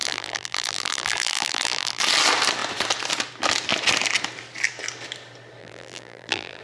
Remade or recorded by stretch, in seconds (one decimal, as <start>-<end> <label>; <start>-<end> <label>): 0.0-2.0 remade; 2.0-5.6 recorded; 5.6-6.6 remade